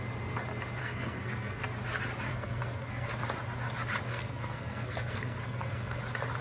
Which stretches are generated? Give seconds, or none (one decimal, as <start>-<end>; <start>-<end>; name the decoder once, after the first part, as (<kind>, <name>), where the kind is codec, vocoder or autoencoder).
0.8-1.6 (codec, SNAC); 2.3-3.1; 4.1-6.0